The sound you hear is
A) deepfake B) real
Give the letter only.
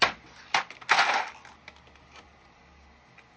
B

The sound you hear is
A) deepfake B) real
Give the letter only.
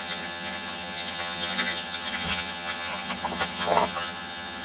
A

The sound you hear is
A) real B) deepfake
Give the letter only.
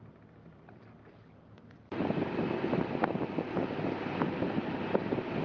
A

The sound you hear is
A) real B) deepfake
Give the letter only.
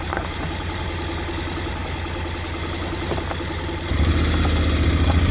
A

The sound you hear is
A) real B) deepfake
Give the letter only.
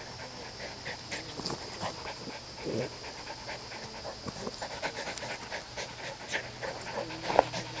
A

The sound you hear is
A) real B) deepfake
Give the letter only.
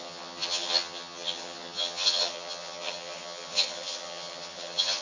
B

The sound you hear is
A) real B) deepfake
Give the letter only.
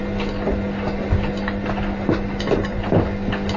A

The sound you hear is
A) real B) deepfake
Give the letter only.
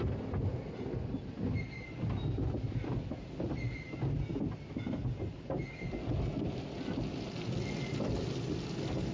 A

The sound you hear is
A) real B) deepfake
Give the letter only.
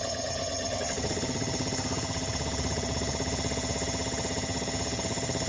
B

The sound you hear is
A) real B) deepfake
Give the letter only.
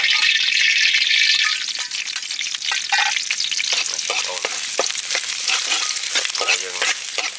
A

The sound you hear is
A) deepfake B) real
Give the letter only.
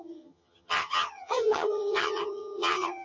A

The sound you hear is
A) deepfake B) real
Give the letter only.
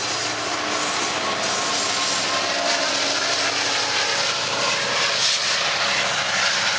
B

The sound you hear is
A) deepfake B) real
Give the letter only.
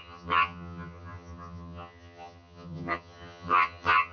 A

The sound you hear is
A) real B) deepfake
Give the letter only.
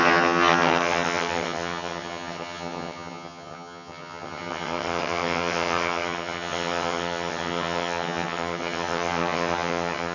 B